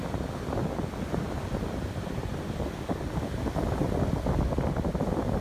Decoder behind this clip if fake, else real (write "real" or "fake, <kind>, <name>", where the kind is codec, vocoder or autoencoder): real